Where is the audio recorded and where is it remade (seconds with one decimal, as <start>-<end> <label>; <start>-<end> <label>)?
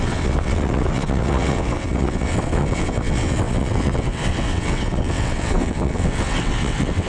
0.0-7.1 remade